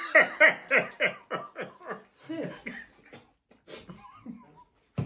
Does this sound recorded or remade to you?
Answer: recorded